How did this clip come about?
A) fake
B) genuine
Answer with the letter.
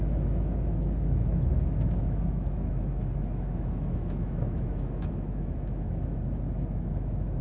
A